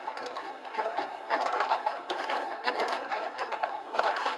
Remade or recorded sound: remade